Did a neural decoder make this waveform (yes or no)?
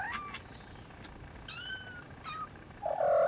no